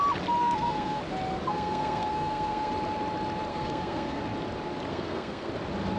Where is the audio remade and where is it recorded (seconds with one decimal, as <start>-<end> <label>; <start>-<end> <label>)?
0.0-0.4 recorded; 0.4-1.0 remade; 1.0-1.5 recorded; 1.5-2.7 remade; 2.7-3.5 recorded; 3.5-4.2 remade; 4.2-4.9 recorded; 4.9-5.5 remade; 5.5-6.0 recorded

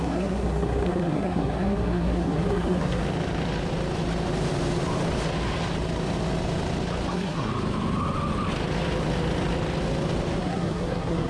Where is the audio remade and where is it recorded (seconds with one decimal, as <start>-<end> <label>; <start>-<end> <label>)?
0.0-3.0 remade; 3.0-7.1 recorded; 7.1-7.5 remade; 7.5-10.4 recorded; 10.4-11.3 remade

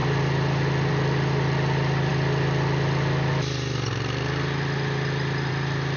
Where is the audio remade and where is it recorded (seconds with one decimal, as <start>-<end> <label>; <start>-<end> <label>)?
0.0-6.0 recorded

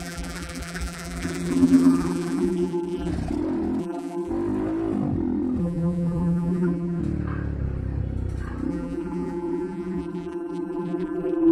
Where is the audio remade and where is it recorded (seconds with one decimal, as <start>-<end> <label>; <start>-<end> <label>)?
0.0-3.1 remade; 3.1-3.8 recorded; 3.8-4.3 remade; 4.3-5.6 recorded; 5.6-7.0 remade; 7.0-8.7 recorded; 8.7-11.5 remade